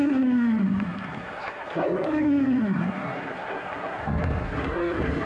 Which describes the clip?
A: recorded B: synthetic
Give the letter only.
B